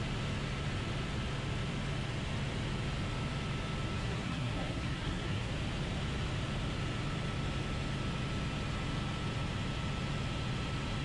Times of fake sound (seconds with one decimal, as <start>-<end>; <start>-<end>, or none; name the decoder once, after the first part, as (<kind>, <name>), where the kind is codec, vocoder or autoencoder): 4.0-5.5 (codec, SNAC)